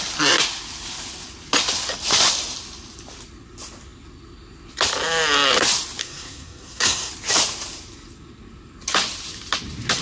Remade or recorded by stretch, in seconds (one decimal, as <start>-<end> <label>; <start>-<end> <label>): 0.0-6.0 recorded; 6.0-7.1 remade; 7.1-10.0 recorded